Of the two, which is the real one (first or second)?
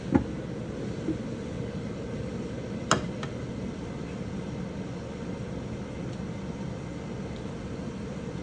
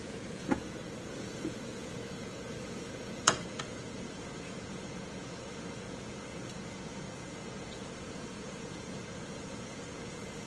first